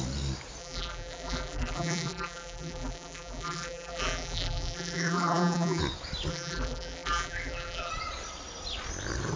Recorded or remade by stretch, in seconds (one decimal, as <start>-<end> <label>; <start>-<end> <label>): 0.0-0.6 recorded; 0.6-5.8 remade; 5.8-6.3 recorded; 6.3-7.9 remade; 7.9-9.4 recorded